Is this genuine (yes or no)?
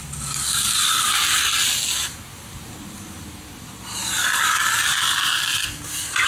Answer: yes